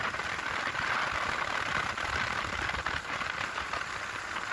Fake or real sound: real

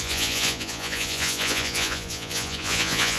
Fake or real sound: fake